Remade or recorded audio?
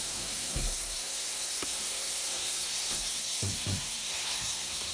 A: remade